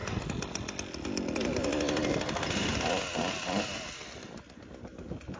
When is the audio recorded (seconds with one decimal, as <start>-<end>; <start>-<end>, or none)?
0.0-5.4